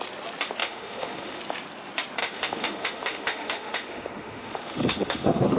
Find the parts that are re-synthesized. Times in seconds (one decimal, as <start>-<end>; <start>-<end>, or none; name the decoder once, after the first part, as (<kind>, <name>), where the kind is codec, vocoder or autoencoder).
0.6-1.4 (autoencoder, DAC-VAE); 2.2-5.6

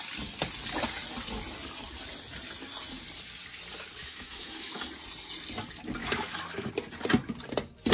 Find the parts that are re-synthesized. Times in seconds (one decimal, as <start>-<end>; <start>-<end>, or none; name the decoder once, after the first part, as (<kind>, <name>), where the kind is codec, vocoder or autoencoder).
4.0-4.8 (autoencoder, DAC-VAE); 6.0-6.7

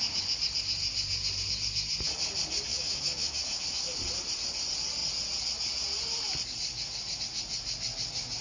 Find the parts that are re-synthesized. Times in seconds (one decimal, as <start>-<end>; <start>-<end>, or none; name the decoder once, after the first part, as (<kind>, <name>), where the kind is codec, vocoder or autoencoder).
2.7-3.6 (autoencoder, DAC-VAE)

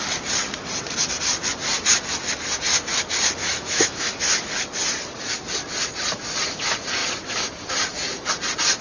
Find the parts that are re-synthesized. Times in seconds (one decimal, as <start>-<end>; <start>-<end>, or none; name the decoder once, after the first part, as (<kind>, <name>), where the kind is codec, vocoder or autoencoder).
3.4-4.2 (autoencoder, DAC-VAE)

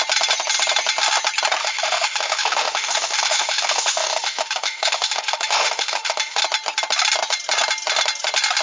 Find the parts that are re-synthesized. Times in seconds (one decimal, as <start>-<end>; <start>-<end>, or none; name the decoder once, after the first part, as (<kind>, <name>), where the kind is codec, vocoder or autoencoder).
1.6-6.4 (autoencoder, DAC-VAE)

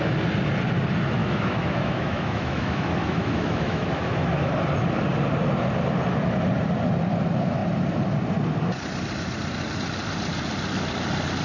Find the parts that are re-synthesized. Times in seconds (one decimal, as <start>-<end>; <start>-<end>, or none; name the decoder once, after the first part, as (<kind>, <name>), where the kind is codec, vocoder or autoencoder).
1.2-4.5 (autoencoder, DAC-VAE)